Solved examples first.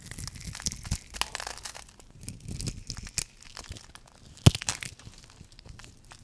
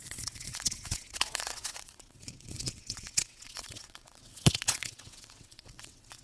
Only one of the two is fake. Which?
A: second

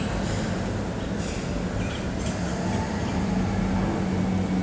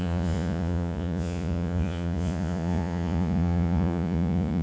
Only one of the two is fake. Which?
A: second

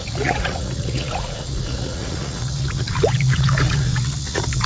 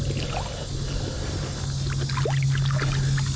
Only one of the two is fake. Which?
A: first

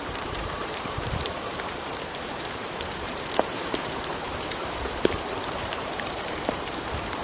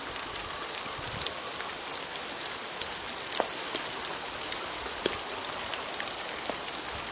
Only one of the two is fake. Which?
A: first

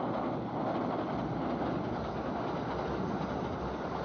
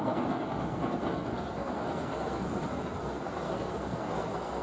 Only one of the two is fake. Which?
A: second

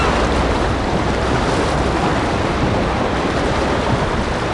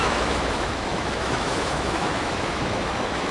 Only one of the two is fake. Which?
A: second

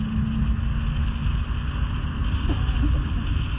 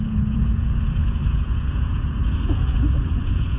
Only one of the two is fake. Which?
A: second